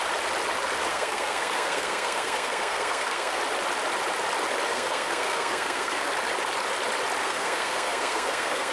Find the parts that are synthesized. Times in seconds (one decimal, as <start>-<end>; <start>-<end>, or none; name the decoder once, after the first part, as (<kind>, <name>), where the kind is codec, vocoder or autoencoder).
0.9-3.4 (codec, SNAC); 4.7-6.1; 7.2-8.7